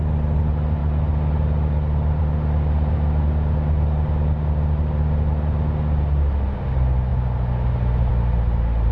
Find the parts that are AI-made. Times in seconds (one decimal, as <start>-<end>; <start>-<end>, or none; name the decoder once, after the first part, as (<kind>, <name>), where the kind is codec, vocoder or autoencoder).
none